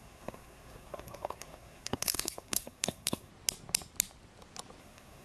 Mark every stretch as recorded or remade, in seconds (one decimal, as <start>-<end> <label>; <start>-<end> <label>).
0.0-3.3 remade; 3.3-4.8 recorded; 4.8-5.2 remade